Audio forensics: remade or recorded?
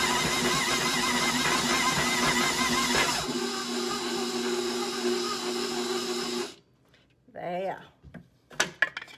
recorded